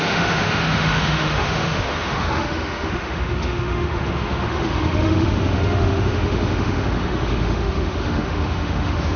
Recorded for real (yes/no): no